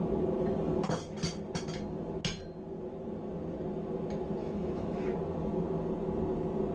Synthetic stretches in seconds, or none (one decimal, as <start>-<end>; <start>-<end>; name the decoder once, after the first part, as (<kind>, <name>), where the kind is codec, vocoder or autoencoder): 4.4-5.0 (autoencoder, DAC-VAE)